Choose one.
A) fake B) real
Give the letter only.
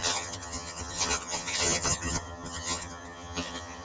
A